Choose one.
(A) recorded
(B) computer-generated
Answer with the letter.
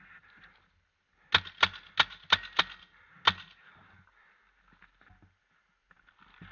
A